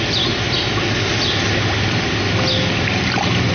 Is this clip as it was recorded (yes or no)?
yes